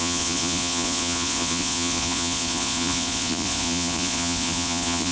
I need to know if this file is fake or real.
fake